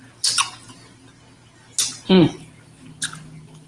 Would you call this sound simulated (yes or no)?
no